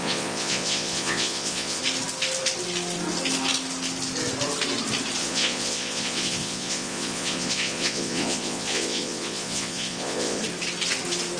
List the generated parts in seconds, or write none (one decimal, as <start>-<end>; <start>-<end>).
0.0-1.8; 5.2-10.4